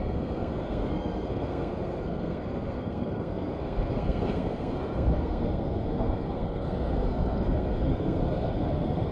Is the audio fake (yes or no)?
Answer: yes